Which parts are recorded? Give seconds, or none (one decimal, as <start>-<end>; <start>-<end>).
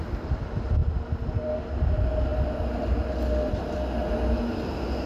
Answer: 0.0-5.1